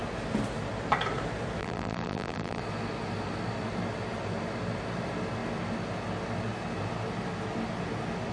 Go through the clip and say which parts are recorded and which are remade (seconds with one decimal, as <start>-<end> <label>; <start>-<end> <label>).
0.0-1.6 recorded; 1.6-2.6 remade; 2.6-8.3 recorded